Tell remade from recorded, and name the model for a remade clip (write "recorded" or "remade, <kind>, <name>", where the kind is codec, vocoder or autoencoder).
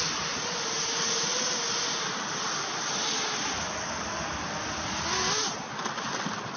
recorded